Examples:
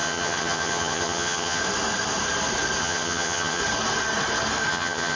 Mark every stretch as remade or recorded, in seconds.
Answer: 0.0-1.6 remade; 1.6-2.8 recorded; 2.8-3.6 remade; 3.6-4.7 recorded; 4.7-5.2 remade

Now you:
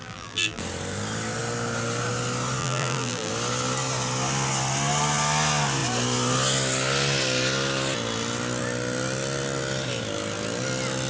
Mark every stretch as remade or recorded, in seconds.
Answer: 0.0-0.6 remade; 0.6-2.6 recorded; 2.6-3.3 remade; 3.3-11.1 recorded